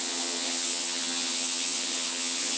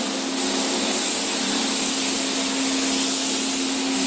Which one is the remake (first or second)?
first